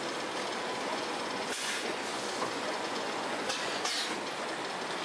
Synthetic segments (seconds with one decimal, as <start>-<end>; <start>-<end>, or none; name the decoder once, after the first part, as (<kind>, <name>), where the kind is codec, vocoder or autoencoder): 0.9-3.9 (vocoder, Vocos)